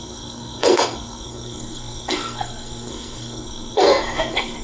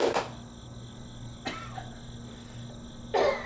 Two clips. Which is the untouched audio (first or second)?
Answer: second